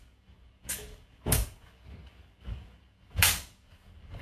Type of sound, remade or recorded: remade